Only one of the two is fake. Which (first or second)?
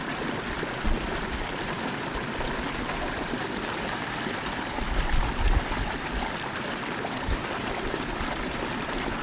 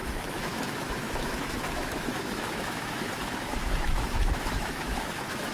second